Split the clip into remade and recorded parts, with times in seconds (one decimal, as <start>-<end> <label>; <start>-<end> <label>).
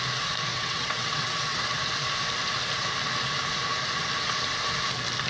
0.0-0.5 recorded; 0.5-1.6 remade; 1.6-5.3 recorded